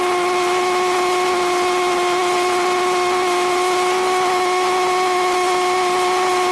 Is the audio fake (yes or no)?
no